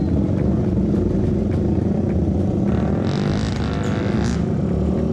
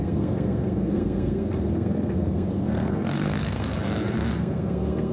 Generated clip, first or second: second